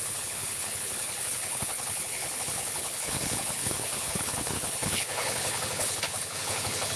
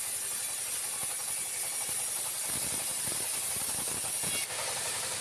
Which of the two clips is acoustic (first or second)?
second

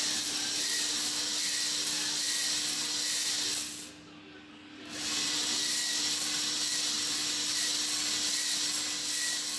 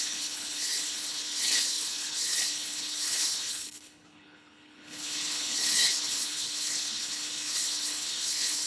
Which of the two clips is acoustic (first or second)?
first